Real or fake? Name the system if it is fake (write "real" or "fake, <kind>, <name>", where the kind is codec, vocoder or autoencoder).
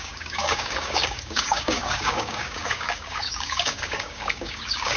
fake, codec, DAC